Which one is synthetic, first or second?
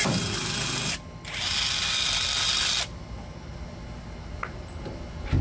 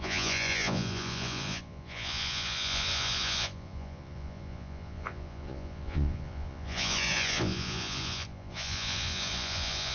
second